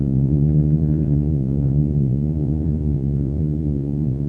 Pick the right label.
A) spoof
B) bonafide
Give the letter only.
A